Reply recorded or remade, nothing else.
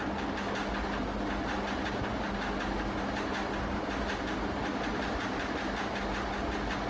recorded